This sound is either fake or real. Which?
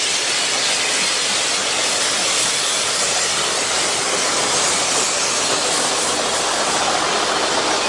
real